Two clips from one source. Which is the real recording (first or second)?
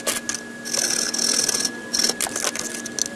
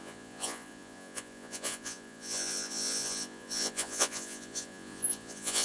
first